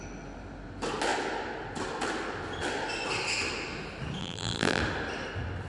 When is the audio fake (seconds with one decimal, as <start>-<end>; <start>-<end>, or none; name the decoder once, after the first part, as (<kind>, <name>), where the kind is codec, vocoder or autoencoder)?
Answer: 4.2-4.8 (vocoder, BigVGAN v2)